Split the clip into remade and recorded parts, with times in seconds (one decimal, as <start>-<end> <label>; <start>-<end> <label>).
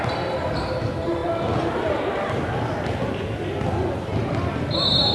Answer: 0.0-5.1 recorded